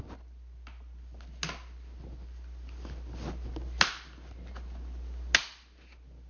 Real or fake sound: real